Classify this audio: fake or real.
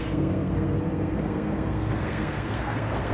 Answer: fake